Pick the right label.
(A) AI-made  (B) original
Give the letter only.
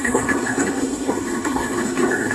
A